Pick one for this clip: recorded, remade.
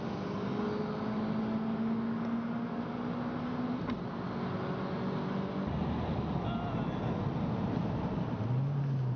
recorded